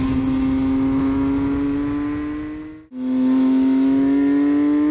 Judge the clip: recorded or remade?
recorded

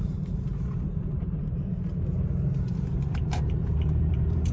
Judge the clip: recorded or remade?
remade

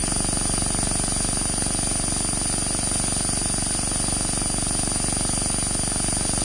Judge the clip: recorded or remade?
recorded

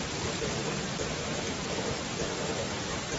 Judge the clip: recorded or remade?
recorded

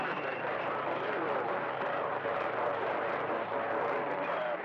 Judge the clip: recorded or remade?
remade